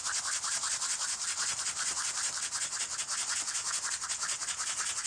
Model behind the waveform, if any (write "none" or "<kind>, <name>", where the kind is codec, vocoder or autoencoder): none